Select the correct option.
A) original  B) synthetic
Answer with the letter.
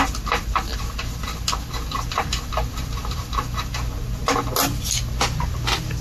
A